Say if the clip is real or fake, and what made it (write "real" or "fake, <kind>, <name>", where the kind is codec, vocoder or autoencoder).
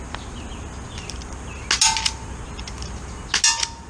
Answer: real